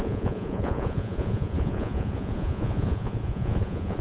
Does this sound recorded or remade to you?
remade